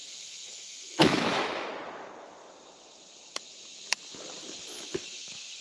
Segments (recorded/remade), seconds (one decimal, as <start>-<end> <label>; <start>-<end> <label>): 0.0-1.7 remade; 1.7-4.8 recorded; 4.8-5.6 remade